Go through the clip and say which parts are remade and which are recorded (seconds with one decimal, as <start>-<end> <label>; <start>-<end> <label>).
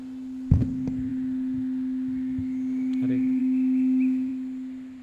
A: 0.0-5.0 recorded